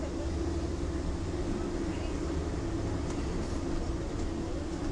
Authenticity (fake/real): real